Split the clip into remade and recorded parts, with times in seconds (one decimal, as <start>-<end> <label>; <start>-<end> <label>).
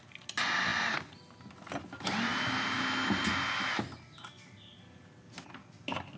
0.0-6.2 recorded